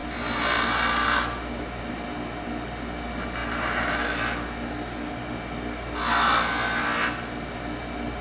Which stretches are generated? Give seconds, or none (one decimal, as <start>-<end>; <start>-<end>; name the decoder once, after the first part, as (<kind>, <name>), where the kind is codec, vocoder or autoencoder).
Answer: none